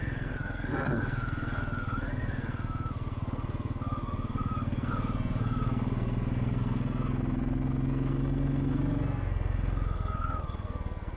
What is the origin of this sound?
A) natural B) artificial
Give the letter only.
B